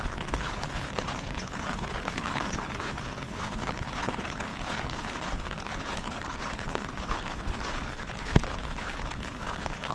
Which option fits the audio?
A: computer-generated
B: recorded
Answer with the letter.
A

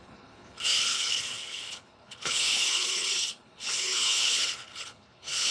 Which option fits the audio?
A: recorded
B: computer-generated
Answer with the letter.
B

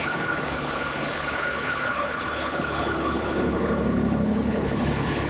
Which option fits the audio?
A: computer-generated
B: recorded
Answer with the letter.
A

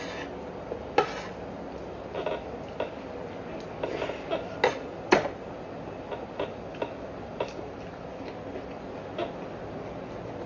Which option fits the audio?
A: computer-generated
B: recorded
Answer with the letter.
B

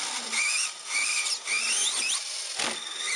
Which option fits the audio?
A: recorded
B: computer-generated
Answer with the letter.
A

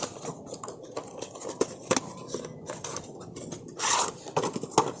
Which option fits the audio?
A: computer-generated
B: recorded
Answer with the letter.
B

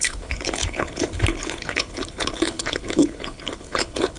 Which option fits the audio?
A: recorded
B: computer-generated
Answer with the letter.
B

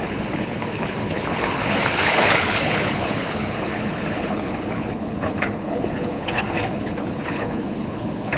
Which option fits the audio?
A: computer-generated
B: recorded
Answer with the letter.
A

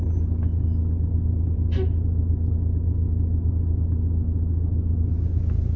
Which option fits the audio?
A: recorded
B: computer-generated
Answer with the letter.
A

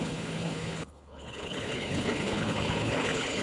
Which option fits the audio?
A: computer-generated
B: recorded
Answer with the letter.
A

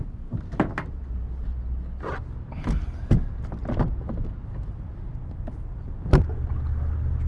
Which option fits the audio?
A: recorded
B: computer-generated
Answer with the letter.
A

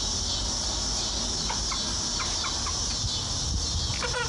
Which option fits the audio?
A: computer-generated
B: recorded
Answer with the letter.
B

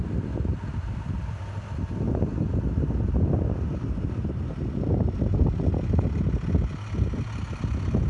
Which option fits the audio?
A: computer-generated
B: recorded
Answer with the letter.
B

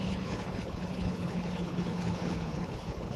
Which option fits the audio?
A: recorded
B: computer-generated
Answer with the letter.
B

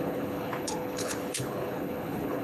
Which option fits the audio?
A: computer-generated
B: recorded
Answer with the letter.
A